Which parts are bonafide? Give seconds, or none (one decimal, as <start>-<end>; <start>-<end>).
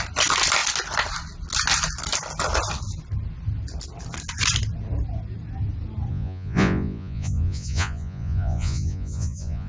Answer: 0.0-6.1